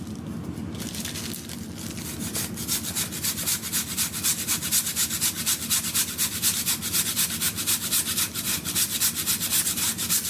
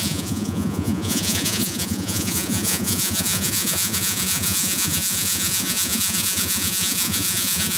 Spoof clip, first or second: second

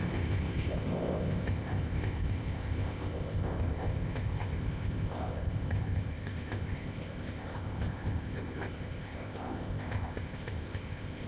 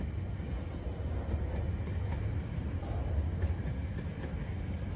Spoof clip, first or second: first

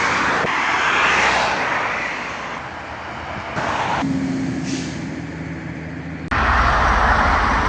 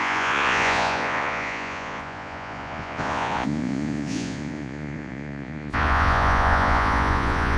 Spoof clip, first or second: second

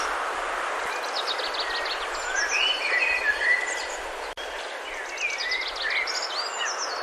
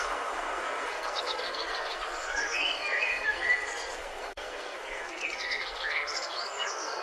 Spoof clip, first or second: second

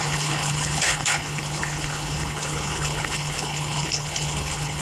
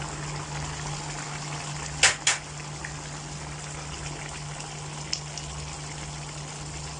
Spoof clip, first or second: first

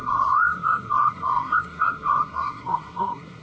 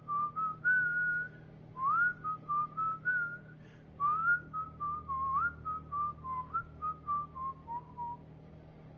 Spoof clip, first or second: first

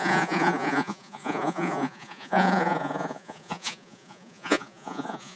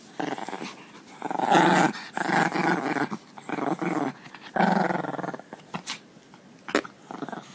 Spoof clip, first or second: first